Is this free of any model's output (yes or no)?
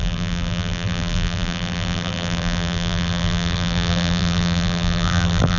no